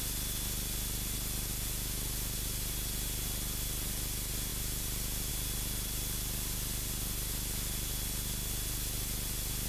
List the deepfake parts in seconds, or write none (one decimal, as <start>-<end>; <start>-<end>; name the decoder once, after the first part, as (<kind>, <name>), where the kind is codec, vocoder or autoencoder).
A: none